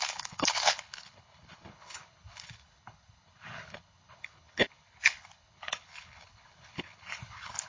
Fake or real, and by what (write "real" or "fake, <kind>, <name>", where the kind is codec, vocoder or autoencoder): fake, codec, HILCodec